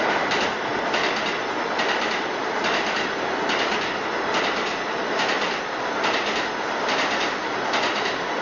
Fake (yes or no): no